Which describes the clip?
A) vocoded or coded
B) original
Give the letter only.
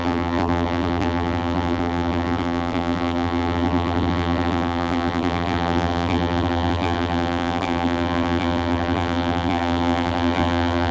A